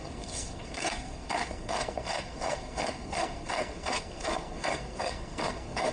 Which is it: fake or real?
fake